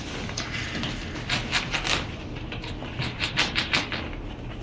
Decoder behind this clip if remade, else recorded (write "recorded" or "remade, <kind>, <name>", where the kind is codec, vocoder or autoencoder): recorded